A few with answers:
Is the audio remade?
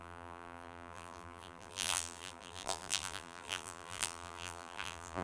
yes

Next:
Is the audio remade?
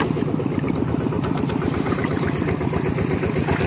yes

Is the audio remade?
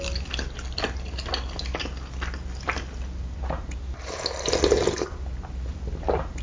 no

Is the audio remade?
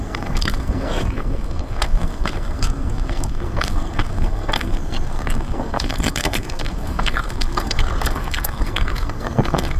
yes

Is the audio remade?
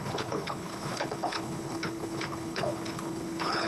yes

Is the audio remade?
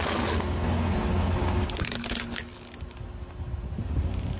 no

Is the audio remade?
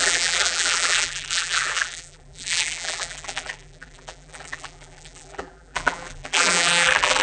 yes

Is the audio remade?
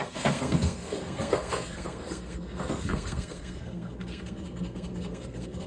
yes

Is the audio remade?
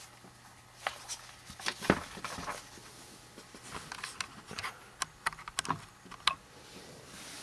no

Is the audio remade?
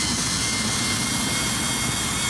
no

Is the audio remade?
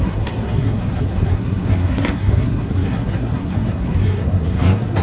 yes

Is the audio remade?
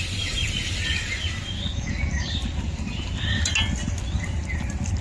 no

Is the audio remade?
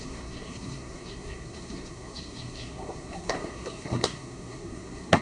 yes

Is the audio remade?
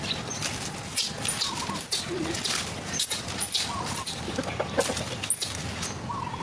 no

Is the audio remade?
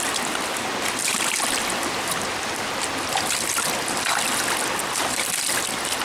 no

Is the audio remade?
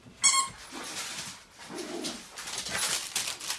no